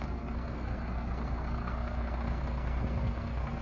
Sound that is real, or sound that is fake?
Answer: fake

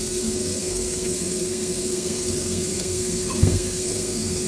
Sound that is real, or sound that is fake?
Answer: fake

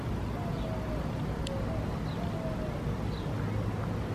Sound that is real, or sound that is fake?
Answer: real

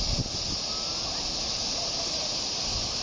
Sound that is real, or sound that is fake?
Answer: real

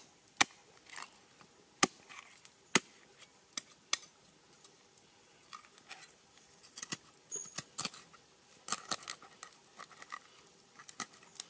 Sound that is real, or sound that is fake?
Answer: real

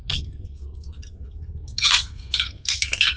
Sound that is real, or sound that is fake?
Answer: fake